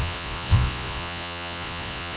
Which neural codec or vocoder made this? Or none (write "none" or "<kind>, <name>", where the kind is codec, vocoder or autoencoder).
vocoder, Vocos